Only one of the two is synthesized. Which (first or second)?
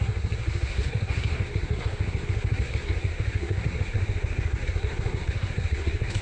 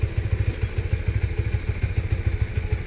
first